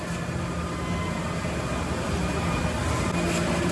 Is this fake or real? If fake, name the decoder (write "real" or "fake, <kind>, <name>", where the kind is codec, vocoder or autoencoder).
real